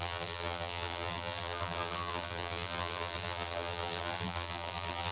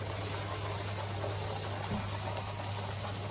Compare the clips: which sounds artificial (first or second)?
first